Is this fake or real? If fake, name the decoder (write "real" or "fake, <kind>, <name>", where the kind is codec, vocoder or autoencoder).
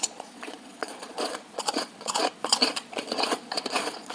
fake, vocoder, Vocos